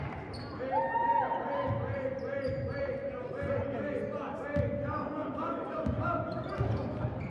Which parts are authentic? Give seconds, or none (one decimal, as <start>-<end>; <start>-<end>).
0.0-3.0; 3.6-5.2; 5.8-7.3